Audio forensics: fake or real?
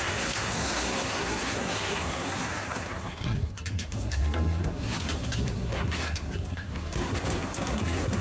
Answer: fake